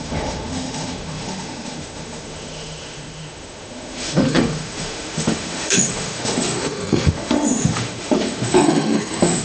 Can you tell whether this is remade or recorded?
remade